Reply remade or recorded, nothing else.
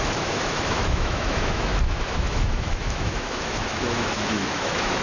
remade